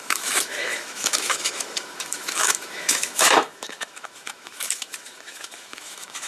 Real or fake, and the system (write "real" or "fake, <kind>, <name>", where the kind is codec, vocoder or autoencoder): fake, autoencoder, DAC-VAE